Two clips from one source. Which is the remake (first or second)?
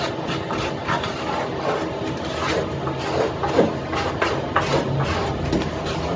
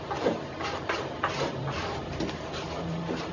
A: second